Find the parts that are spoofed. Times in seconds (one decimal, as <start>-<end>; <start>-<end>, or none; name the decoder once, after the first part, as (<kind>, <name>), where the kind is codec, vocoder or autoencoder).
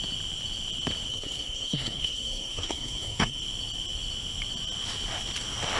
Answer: 1.1-3.4 (codec, SNAC)